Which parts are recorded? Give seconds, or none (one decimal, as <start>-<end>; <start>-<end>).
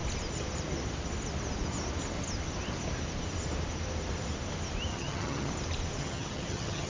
0.0-4.9; 5.5-6.0